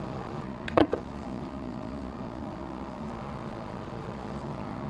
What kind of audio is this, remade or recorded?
remade